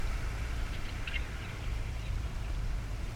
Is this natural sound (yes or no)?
no